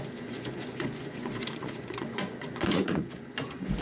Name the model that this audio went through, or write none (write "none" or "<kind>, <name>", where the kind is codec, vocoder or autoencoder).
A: vocoder, Vocos